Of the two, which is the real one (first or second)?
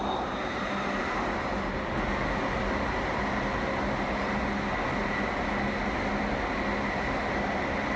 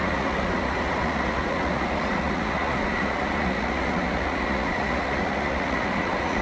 first